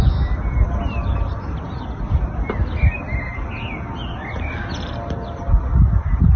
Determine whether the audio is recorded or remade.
recorded